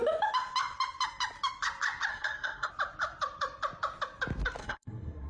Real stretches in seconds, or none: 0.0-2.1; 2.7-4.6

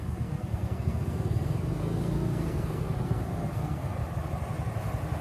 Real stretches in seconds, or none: 4.0-5.2

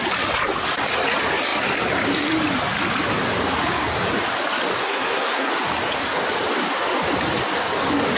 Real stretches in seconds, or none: 0.0-4.8; 5.5-8.2

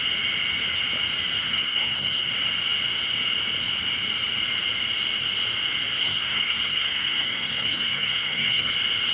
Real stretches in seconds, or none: 0.0-1.5; 2.3-6.0; 8.7-9.1